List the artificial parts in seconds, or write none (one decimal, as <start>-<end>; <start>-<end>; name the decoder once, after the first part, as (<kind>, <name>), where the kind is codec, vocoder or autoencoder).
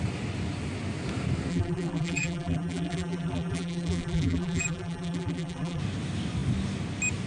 1.5-5.8 (vocoder, BigVGAN v2)